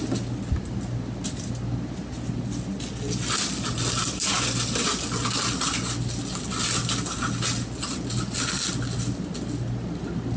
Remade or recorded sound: recorded